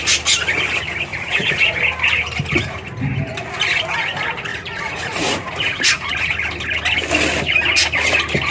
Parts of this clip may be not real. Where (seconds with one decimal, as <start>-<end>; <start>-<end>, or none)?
1.1-1.8; 4.5-6.1